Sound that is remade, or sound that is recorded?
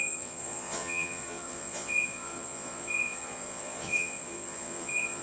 remade